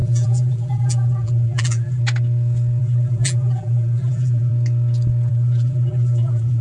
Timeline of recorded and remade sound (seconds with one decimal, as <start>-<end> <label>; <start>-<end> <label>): 0.0-2.0 remade; 2.0-2.8 recorded; 2.8-4.5 remade; 4.5-5.3 recorded; 5.3-6.6 remade